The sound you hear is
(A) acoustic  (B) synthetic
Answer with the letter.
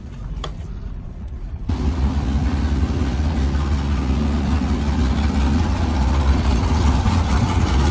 B